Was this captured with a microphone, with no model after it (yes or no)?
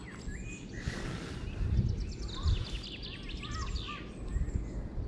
yes